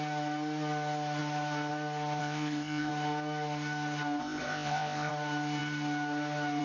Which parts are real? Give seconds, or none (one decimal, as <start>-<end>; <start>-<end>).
0.0-2.2; 2.9-4.2; 5.1-6.6